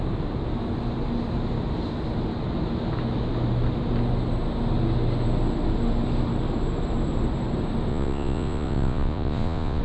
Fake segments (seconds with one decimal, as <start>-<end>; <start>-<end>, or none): 7.9-9.8